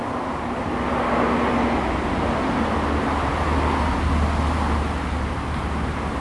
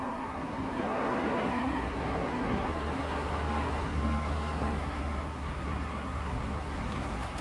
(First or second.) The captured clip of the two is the first